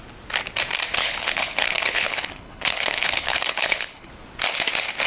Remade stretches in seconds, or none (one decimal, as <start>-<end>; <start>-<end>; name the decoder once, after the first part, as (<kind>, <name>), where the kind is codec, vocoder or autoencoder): 1.0-4.1 (codec, HILCodec)